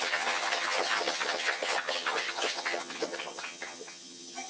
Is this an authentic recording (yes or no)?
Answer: no